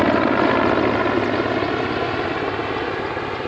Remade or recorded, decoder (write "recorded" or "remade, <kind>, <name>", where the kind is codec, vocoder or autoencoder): recorded